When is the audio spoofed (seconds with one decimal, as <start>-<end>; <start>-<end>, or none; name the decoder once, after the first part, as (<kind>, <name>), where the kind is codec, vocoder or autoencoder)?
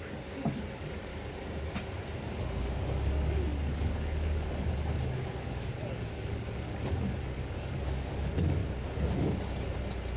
0.0-1.1 (codec, DAC); 2.4-8.6